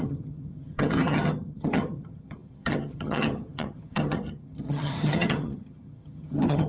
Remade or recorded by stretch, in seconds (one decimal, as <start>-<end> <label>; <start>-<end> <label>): 0.0-6.7 remade